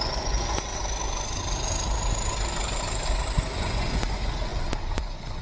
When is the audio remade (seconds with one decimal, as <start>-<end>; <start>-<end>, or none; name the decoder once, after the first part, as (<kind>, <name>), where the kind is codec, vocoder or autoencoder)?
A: 0.0-0.7 (vocoder, Vocos); 3.6-5.4